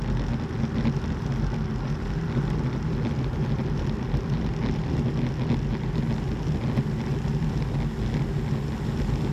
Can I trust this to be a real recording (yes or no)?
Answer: yes